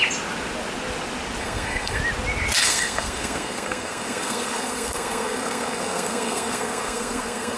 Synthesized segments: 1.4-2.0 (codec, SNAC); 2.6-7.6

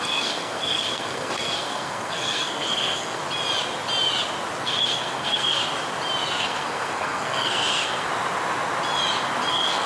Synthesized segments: 0.0-3.2 (codec, SNAC); 4.6-5.6; 6.4-8.1; 9.5-9.9